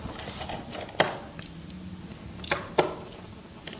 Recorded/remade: recorded